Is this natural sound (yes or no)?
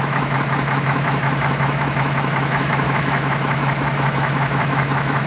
no